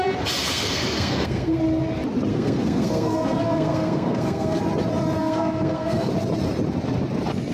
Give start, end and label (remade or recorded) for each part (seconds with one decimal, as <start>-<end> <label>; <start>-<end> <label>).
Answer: 0.0-0.4 recorded; 0.4-1.6 remade; 1.6-2.3 recorded; 2.3-4.6 remade; 4.6-5.2 recorded; 5.2-6.1 remade; 6.1-7.5 recorded